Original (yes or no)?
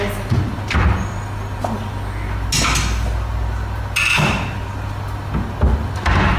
yes